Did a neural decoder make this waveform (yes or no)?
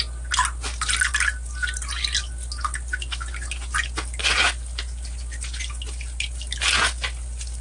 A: no